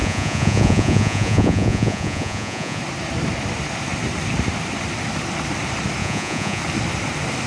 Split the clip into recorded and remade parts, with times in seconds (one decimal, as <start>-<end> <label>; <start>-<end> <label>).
0.0-2.8 remade; 2.8-6.0 recorded; 6.0-6.6 remade; 6.6-7.5 recorded